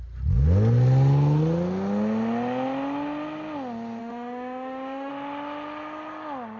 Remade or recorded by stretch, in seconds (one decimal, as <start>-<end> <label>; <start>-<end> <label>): 0.0-4.0 recorded; 4.0-5.1 remade; 5.1-6.6 recorded

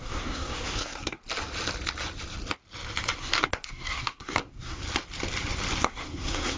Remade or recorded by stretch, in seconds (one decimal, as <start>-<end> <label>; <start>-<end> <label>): 0.0-1.2 remade; 1.2-3.2 recorded; 3.2-4.8 remade; 4.8-5.8 recorded; 5.8-6.6 remade